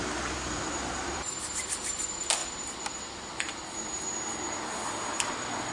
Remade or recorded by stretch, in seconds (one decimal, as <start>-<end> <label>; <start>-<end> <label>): 0.0-5.7 remade